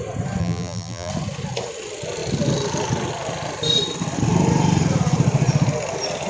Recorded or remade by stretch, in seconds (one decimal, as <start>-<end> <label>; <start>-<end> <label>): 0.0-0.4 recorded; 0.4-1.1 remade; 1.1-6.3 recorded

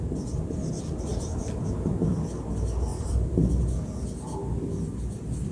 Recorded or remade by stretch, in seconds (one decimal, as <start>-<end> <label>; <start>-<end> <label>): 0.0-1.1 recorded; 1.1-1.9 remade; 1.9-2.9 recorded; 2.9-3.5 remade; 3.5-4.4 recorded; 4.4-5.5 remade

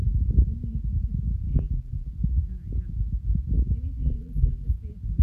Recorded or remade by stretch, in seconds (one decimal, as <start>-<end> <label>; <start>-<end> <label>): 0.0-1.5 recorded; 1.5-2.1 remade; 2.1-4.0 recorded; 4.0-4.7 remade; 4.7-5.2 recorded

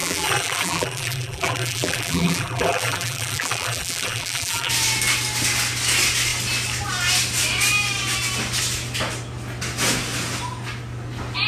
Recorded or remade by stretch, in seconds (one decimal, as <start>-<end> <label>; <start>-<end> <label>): 0.0-4.7 remade; 4.7-11.5 recorded